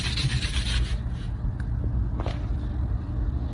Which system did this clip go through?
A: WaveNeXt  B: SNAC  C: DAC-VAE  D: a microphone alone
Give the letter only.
D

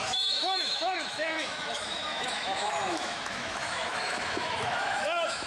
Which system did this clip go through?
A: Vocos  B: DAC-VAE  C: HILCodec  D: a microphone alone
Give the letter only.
B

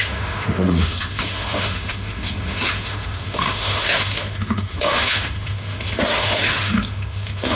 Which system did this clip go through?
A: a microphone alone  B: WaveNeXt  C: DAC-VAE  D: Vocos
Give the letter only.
C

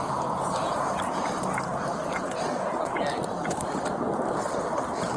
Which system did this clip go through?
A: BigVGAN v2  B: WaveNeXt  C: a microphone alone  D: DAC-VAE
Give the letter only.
C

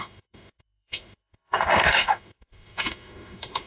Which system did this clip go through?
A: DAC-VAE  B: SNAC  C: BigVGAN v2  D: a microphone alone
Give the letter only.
A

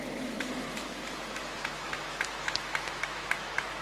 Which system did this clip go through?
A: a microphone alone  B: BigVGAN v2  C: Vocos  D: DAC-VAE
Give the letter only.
D